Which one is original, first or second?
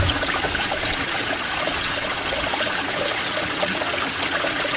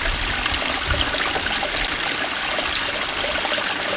second